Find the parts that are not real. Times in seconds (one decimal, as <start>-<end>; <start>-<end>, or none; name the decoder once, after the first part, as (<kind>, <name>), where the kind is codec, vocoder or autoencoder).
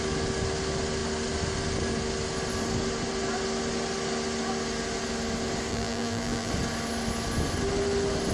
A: 5.7-6.5 (vocoder, BigVGAN v2)